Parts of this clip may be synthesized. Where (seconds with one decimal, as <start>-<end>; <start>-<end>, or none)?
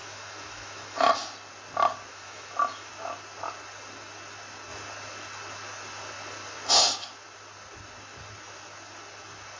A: 0.0-1.1; 2.1-2.9